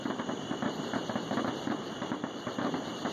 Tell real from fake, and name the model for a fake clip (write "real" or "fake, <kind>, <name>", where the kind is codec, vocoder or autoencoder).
fake, vocoder, BigVGAN v2